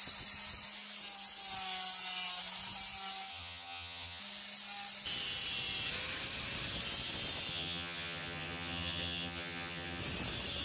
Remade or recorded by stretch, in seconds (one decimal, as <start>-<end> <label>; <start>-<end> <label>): 0.0-3.3 recorded; 3.3-4.2 remade; 4.2-7.5 recorded; 7.5-10.0 remade; 10.0-10.6 recorded